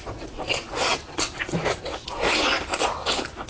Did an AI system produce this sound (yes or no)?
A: no